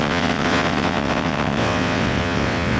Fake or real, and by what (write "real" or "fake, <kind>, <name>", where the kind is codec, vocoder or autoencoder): fake, vocoder, WaveNeXt